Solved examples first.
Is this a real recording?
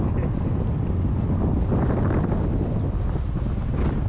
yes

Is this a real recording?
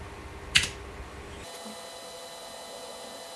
yes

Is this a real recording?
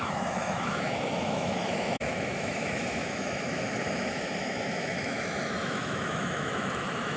no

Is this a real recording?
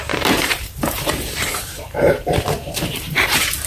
no